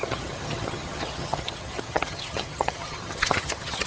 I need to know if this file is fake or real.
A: fake